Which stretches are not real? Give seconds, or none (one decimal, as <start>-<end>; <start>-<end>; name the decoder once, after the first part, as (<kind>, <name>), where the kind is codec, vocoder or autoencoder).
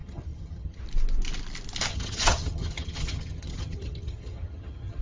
0.0-0.8 (vocoder, HiFi-GAN); 1.9-5.0